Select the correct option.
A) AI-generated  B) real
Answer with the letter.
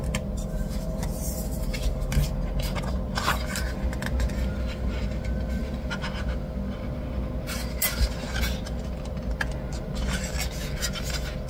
B